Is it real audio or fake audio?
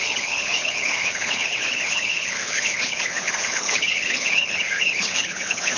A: fake